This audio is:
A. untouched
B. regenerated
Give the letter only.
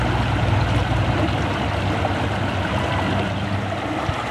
A